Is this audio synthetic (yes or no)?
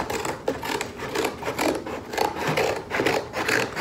no